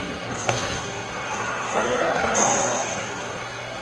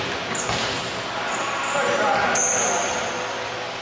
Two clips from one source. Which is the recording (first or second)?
second